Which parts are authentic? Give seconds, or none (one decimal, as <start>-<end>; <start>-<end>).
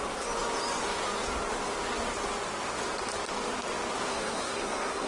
0.0-4.1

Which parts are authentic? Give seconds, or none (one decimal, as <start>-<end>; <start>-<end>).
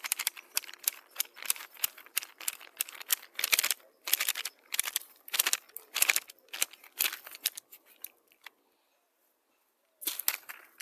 0.0-3.1; 3.6-10.8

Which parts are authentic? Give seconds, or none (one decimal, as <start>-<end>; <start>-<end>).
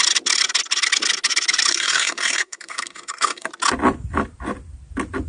0.0-1.7; 3.5-5.3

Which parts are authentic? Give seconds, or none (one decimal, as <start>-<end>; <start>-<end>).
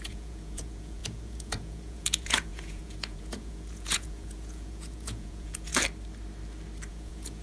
5.7-6.9